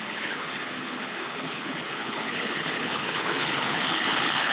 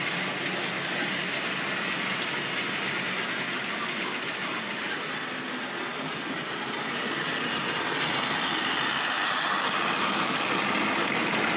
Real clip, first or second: second